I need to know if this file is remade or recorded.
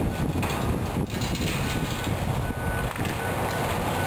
recorded